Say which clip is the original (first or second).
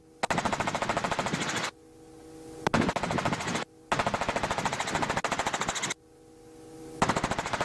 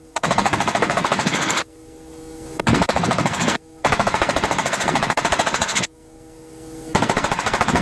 first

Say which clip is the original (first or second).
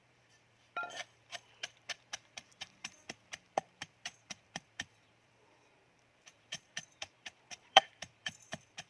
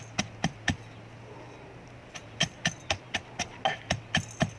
second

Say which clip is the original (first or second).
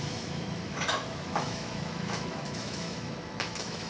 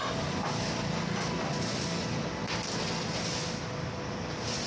second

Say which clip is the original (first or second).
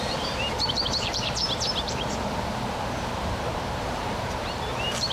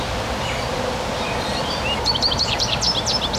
second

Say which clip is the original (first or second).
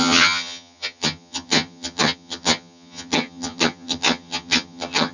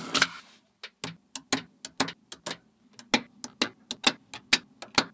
second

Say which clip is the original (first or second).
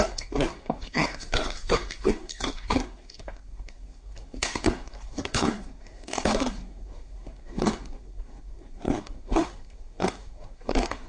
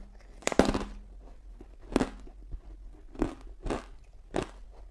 second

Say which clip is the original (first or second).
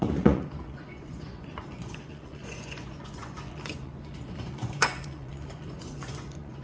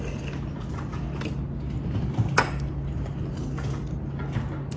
second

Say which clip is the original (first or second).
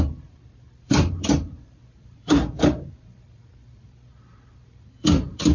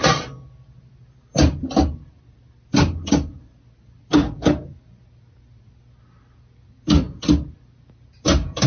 second